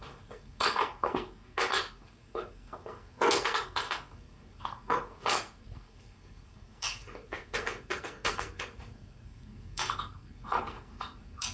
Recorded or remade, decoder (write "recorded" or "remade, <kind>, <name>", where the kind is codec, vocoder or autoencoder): remade, codec, SNAC